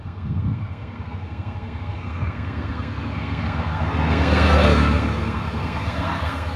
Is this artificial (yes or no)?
yes